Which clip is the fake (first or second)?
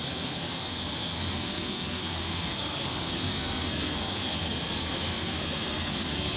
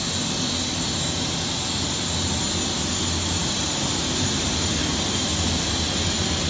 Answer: first